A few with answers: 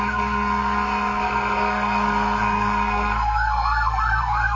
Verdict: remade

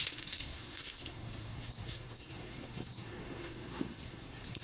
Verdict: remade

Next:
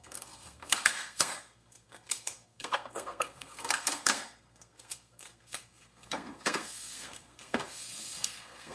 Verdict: remade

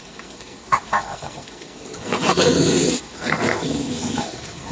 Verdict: remade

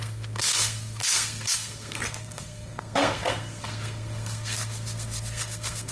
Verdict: remade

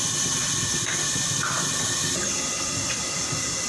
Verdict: recorded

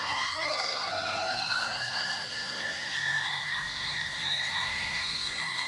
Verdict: remade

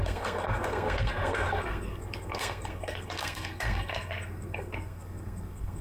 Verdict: remade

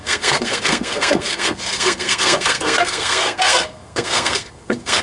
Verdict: remade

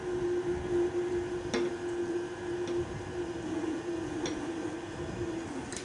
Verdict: recorded